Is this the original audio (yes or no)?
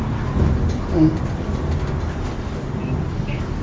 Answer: yes